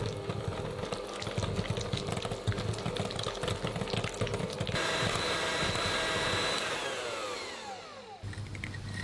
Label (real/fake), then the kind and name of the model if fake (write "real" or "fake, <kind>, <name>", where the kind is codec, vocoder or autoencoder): real